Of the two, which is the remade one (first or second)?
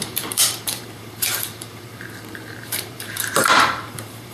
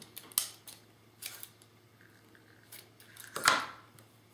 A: first